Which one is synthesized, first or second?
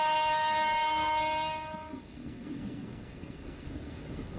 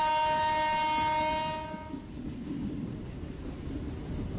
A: first